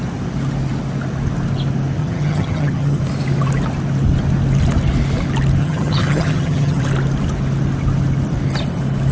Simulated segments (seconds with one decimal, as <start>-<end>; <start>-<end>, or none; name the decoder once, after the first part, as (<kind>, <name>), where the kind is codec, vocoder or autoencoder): 2.0-3.0 (vocoder, HiFi-GAN); 5.6-6.8